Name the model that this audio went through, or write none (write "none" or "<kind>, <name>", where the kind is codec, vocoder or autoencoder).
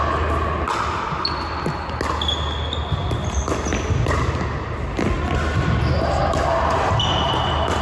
none